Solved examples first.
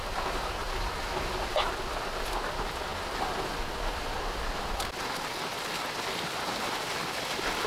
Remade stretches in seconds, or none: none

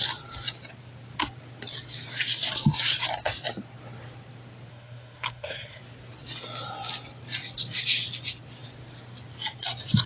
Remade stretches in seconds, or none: 4.7-5.8 (codec, SNAC)

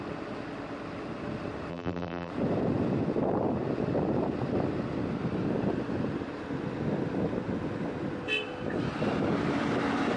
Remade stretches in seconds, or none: 1.7-2.3 (vocoder, BigVGAN v2)